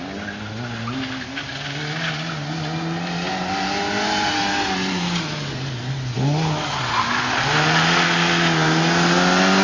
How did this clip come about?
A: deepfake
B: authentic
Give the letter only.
B